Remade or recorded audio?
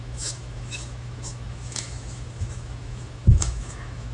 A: remade